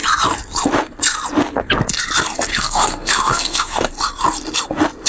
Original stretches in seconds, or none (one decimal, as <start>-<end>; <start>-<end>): 0.0-2.5; 3.9-5.1